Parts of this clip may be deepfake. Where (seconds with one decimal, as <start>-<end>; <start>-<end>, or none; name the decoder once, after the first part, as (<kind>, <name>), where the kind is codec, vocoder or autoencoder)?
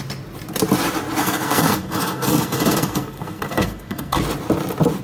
1.2-4.2 (codec, SNAC)